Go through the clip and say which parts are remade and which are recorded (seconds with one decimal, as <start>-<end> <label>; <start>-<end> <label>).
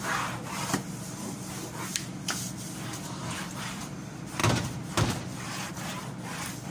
0.0-2.1 recorded; 2.1-3.8 remade; 3.8-4.4 recorded; 4.4-5.7 remade; 5.7-6.7 recorded